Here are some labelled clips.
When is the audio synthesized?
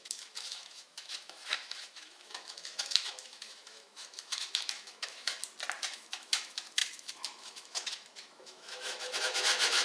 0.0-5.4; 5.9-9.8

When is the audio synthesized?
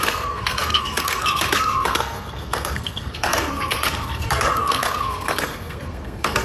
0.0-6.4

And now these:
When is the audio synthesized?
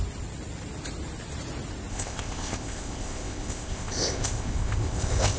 1.9-5.4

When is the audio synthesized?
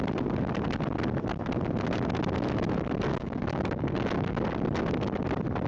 3.1-4.4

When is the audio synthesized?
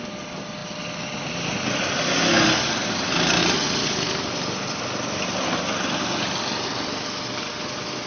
none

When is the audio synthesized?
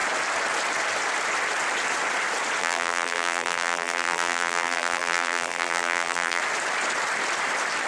2.6-6.4